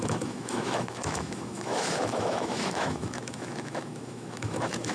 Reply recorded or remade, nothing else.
remade